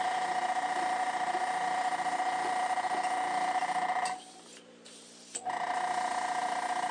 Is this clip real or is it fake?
real